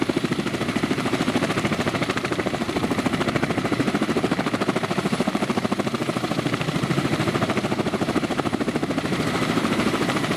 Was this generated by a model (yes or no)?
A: yes